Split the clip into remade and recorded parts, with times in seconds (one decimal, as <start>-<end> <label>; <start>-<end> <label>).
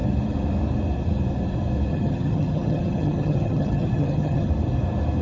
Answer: 0.0-1.9 recorded; 1.9-4.5 remade; 4.5-5.2 recorded